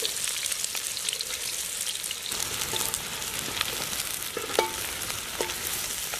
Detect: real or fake real